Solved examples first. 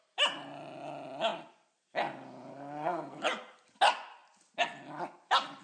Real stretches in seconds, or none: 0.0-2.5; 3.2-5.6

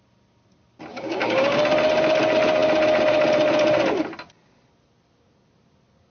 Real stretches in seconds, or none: 0.0-0.9; 1.6-6.1

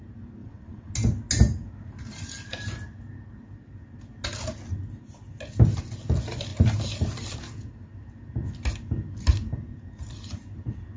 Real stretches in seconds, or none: 0.0-0.4; 0.9-11.0

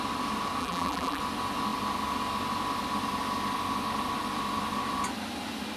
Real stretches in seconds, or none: 0.0-0.6; 1.2-5.8

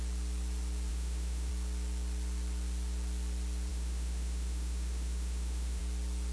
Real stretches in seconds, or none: 0.0-0.9; 1.5-3.7; 5.8-6.3

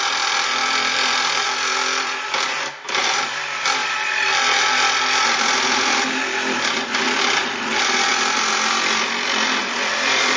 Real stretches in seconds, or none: 3.8-5.9

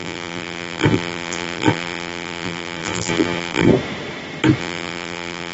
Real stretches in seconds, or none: 3.7-4.6